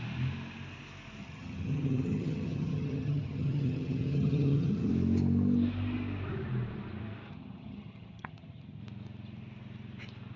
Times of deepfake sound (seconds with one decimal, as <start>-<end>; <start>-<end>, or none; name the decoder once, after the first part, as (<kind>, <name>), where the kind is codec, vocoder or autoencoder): 1.2-4.9 (vocoder, HiFi-GAN); 7.3-8.8

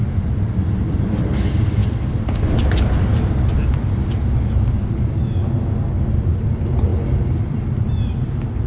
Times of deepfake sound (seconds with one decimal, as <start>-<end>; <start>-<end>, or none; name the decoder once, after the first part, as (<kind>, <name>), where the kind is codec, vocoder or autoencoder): none

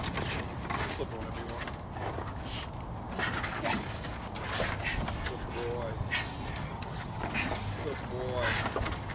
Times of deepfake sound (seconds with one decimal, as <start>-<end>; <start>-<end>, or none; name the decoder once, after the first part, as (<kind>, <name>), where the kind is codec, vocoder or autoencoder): 6.6-7.3 (vocoder, HiFi-GAN)

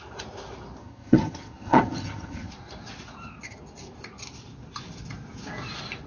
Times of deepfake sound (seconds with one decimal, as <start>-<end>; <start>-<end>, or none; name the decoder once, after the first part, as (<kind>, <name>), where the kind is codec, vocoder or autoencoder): 0.8-2.5 (vocoder, HiFi-GAN)

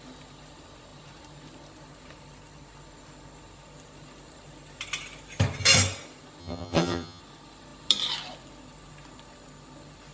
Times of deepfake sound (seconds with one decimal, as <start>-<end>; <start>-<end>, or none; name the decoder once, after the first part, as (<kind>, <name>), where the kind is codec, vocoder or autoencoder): 6.4-7.2 (vocoder, HiFi-GAN)

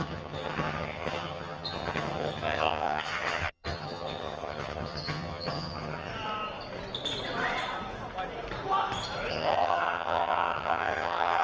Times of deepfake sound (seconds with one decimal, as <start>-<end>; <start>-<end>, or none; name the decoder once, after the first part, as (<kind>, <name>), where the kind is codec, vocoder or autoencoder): 0.0-6.1 (vocoder, HiFi-GAN); 9.3-11.4